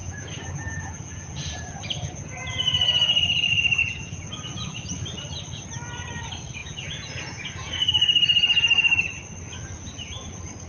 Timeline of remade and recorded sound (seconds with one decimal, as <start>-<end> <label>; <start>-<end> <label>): 0.0-2.3 remade; 2.3-3.8 recorded; 3.8-4.3 remade; 4.3-6.6 recorded; 6.6-7.7 remade; 7.7-10.7 recorded